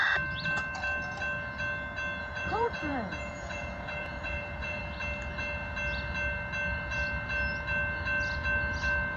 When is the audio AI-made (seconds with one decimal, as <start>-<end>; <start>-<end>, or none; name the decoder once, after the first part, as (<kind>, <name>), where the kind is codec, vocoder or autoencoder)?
2.2-4.8 (vocoder, Vocos)